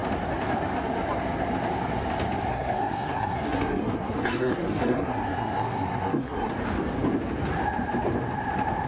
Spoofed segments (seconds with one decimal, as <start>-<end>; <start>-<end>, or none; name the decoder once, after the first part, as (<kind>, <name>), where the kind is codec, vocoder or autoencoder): 2.5-6.5 (codec, SNAC)